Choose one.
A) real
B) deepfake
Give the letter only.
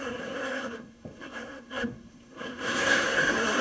B